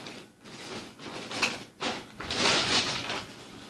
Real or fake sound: fake